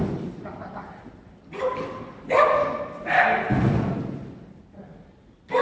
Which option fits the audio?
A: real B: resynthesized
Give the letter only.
A